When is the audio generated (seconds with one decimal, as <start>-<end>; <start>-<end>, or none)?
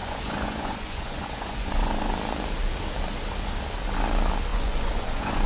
0.0-2.1; 4.5-5.5